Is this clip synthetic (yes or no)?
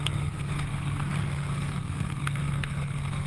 yes